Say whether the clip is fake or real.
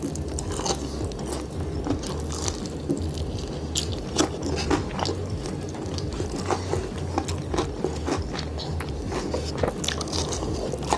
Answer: real